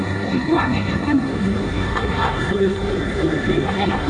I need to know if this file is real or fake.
fake